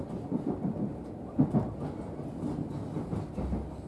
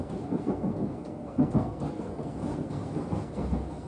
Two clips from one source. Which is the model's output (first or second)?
second